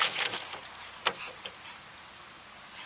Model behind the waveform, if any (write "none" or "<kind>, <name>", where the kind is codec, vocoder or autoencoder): none